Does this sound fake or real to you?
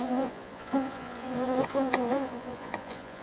fake